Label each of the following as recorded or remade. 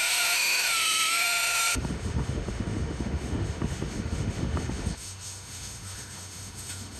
remade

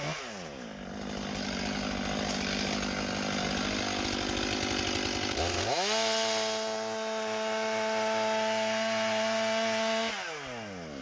recorded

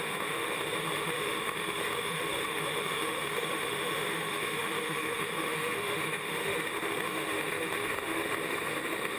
remade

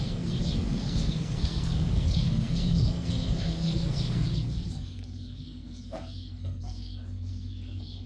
remade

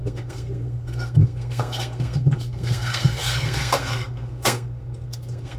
remade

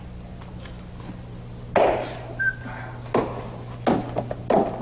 recorded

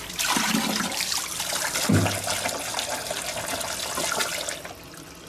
recorded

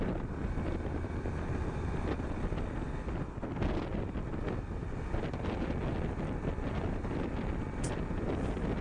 recorded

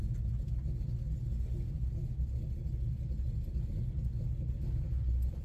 recorded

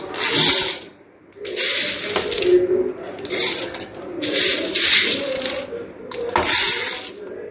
recorded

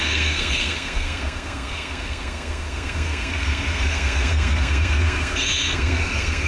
remade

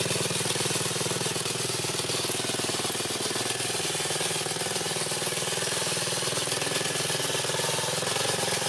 recorded